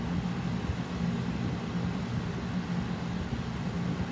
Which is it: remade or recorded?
recorded